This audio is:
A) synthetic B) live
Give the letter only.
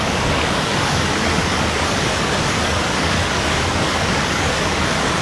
A